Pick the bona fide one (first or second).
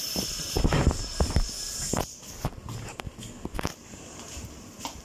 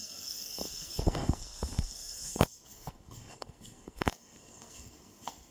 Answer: first